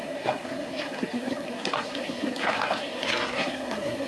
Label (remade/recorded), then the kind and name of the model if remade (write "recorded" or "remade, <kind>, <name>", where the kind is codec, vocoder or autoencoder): remade, codec, SNAC